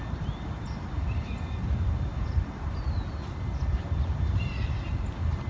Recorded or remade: recorded